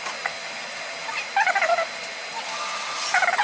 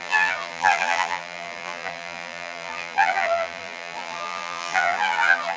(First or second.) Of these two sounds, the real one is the first